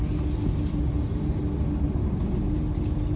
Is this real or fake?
real